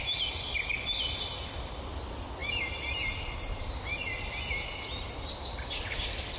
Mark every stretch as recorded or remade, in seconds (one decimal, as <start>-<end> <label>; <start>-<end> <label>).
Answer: 0.0-6.4 recorded